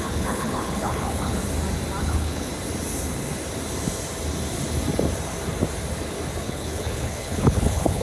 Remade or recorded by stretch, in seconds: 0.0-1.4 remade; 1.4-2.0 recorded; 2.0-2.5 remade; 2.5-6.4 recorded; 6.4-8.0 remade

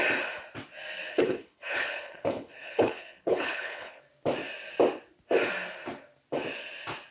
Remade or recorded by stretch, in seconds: 0.0-1.1 recorded; 1.1-4.0 remade; 4.0-7.1 recorded

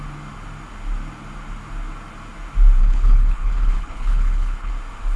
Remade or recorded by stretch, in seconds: 0.0-2.8 recorded; 2.8-4.7 remade; 4.7-5.2 recorded

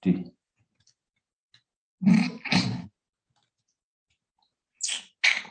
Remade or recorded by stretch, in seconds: 0.0-5.5 recorded

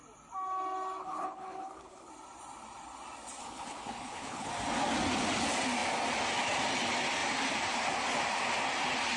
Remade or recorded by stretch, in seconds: 0.0-1.0 recorded; 1.0-2.1 remade; 2.1-3.4 recorded; 3.4-4.5 remade; 4.5-9.2 recorded

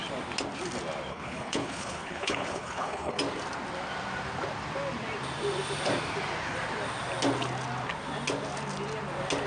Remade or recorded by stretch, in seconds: 0.0-1.1 recorded; 1.1-3.2 remade; 3.2-9.5 recorded

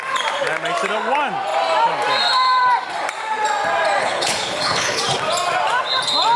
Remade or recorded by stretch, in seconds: 0.0-4.0 recorded; 4.0-5.0 remade; 5.0-6.4 recorded